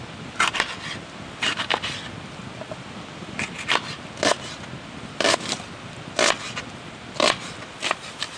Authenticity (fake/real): real